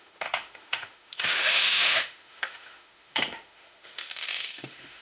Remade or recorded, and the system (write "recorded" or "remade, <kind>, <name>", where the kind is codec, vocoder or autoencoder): remade, autoencoder, DAC-VAE